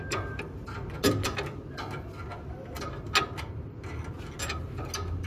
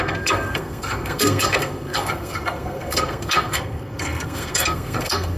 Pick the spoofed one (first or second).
second